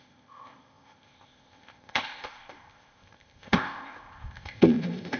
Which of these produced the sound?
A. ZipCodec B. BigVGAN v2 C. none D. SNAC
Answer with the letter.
A